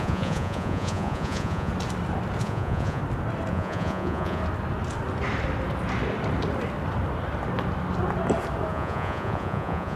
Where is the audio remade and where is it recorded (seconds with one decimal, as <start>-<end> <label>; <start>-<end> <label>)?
0.0-1.7 remade; 1.7-2.4 recorded; 2.4-3.0 remade; 3.0-3.5 recorded; 3.5-4.4 remade; 4.4-8.7 recorded; 8.7-10.0 remade